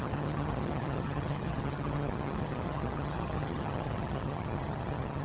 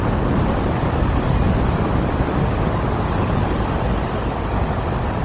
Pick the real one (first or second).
second